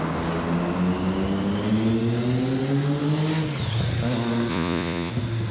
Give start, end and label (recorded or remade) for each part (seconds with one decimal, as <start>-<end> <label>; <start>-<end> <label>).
0.0-4.5 recorded; 4.5-5.1 remade; 5.1-5.5 recorded